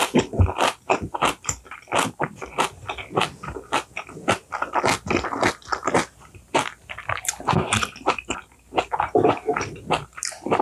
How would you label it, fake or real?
real